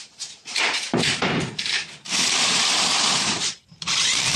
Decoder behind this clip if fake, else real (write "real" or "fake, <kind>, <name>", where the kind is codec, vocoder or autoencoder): fake, vocoder, BigVGAN v2